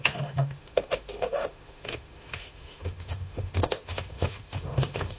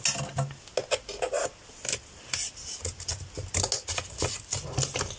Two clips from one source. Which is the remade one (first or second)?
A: first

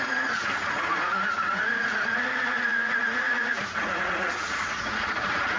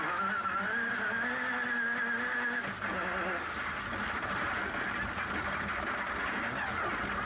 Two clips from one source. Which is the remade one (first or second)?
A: first